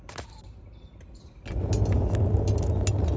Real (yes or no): yes